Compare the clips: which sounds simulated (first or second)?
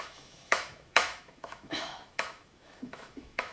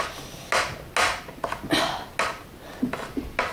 first